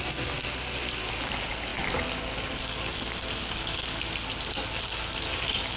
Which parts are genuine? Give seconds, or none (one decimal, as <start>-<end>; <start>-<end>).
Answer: 0.0-3.4; 4.0-5.8